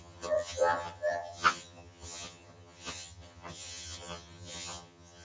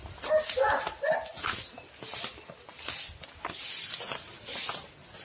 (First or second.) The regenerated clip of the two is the first